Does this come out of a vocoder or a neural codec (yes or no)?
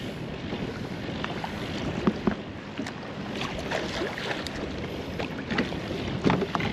no